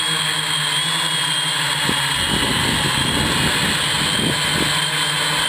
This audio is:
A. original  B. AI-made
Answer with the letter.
A